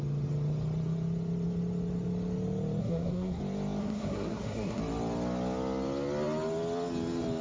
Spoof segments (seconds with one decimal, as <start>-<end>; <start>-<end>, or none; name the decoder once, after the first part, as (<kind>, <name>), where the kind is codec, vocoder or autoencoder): 2.8-3.4 (codec, SNAC); 3.8-4.8